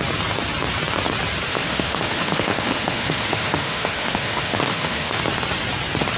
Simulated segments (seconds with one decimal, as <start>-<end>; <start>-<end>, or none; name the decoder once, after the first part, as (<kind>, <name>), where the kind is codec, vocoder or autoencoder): 1.5-5.2 (autoencoder, DAC-VAE)